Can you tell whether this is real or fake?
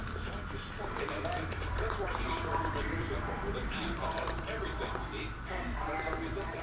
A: fake